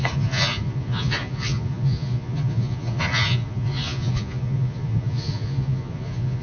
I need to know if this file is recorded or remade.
remade